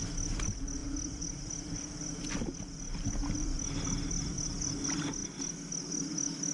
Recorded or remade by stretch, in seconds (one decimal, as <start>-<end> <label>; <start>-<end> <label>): 0.0-0.8 recorded; 0.8-4.7 remade; 4.7-6.5 recorded